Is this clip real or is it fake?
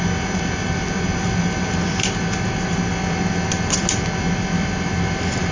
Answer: real